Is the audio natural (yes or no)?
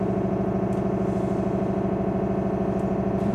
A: yes